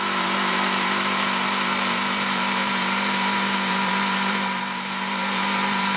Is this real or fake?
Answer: fake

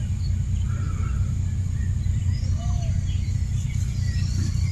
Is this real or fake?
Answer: real